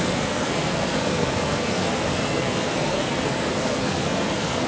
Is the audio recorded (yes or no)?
no